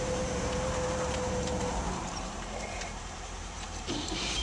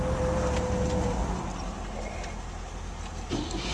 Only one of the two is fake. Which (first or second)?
first